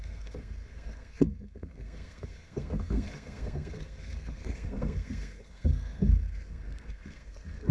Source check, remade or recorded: remade